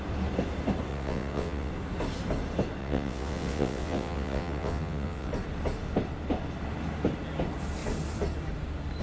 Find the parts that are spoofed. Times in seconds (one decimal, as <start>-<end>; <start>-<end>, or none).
0.9-1.7; 2.8-5.3